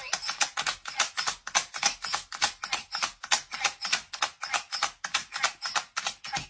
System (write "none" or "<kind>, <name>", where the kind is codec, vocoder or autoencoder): none